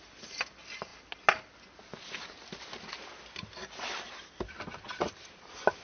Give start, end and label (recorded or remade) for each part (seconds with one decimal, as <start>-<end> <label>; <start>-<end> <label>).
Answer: 0.0-5.8 recorded